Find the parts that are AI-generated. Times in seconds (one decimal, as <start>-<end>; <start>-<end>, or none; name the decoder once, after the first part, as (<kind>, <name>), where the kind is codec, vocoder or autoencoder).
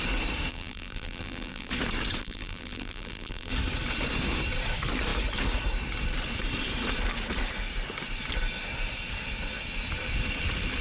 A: 0.5-1.7 (vocoder, BigVGAN v2); 2.2-3.5